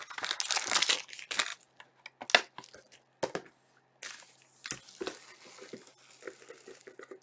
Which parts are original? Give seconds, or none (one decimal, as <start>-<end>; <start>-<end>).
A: 0.0-7.2